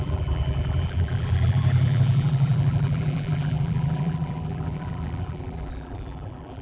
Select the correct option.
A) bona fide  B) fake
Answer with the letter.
B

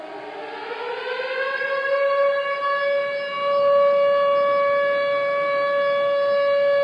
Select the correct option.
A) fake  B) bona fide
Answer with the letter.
B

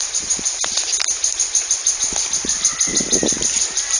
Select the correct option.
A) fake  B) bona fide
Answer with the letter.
B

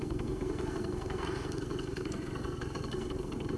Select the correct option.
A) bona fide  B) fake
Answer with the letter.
B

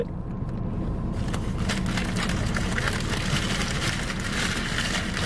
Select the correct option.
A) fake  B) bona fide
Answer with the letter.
B